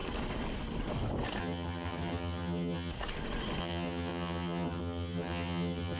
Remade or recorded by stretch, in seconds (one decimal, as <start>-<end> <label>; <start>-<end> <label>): 0.0-1.4 recorded; 1.4-2.9 remade; 2.9-3.6 recorded; 3.6-6.0 remade

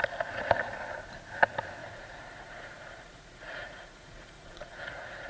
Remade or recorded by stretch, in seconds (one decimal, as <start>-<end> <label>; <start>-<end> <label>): 0.0-1.8 recorded; 1.8-5.3 remade

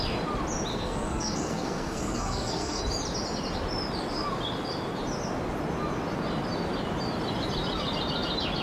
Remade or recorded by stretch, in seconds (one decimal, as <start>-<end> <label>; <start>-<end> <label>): 0.0-0.7 recorded; 0.7-2.8 remade; 2.8-8.6 recorded

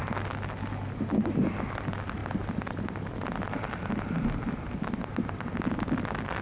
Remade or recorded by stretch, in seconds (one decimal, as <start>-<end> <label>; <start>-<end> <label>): 0.0-6.4 recorded

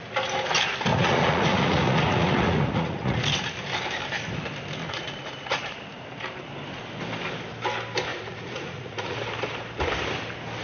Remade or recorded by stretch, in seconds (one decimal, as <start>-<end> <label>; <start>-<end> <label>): 0.0-0.9 recorded; 0.9-3.2 remade; 3.2-4.8 recorded; 4.8-5.8 remade; 5.8-8.1 recorded; 8.1-9.2 remade; 9.2-10.6 recorded

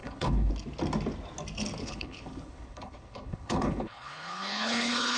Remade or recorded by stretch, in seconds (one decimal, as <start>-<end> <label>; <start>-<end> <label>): 0.0-0.5 remade; 0.5-1.8 recorded; 1.8-5.2 remade

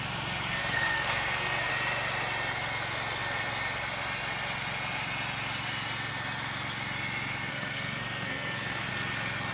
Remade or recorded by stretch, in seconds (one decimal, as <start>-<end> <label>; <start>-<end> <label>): 0.0-0.6 recorded; 0.6-1.7 remade; 1.7-7.5 recorded; 7.5-8.9 remade; 8.9-9.5 recorded